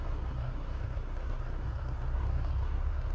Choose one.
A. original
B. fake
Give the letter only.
B